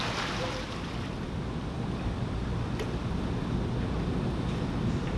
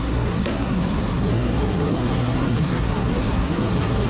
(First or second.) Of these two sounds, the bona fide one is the first